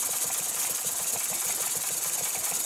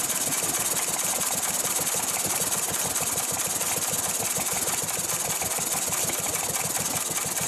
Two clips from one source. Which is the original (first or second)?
second